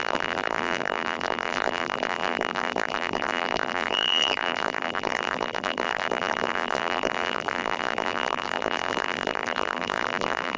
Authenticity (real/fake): fake